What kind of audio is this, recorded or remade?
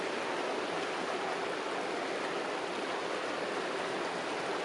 recorded